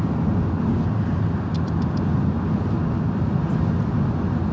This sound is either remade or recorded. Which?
recorded